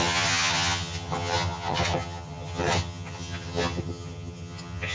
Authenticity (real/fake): fake